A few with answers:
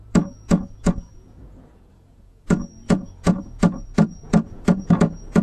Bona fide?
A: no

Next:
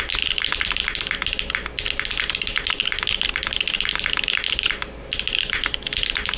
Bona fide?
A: yes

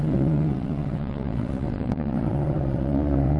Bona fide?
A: no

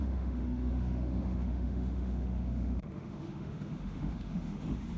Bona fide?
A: no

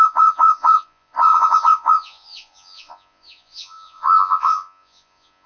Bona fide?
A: no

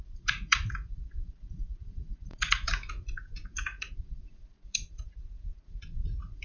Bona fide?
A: no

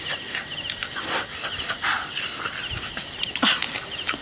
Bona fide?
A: yes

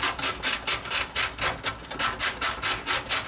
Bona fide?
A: yes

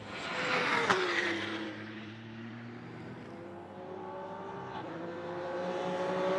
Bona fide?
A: no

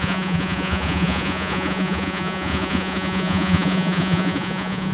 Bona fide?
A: no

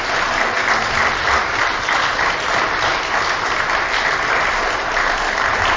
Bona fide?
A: yes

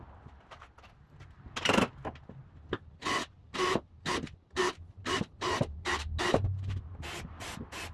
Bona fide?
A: yes